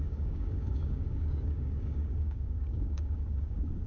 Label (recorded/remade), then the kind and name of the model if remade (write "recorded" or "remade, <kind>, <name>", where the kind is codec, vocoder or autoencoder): remade, codec, DAC